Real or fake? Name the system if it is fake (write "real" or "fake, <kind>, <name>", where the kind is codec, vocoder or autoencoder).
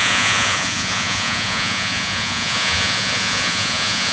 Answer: fake, vocoder, Vocos